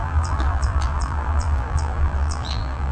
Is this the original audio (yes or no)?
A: no